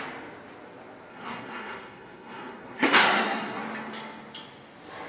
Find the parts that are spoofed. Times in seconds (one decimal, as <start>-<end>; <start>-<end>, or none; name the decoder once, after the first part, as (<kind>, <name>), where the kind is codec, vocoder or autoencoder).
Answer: 1.1-3.6 (codec, SNAC)